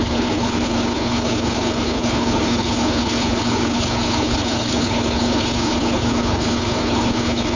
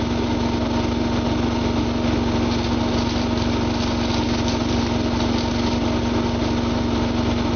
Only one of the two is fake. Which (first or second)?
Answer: first